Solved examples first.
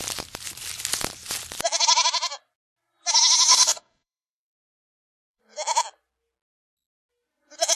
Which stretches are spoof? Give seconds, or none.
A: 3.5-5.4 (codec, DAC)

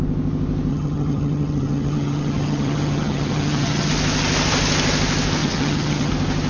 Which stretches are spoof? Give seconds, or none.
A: 0.7-3.9 (vocoder, HiFi-GAN); 5.4-6.1

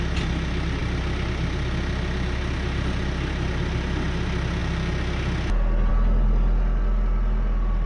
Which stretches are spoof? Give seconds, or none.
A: none